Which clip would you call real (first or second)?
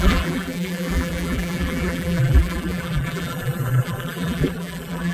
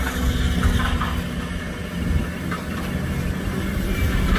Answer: second